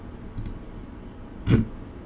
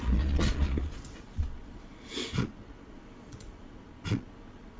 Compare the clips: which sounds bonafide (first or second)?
first